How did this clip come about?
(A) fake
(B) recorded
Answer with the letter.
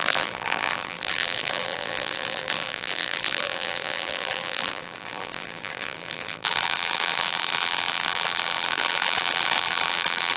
A